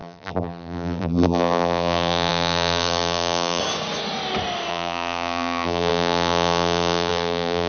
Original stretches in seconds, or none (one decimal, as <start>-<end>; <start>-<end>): 3.6-4.7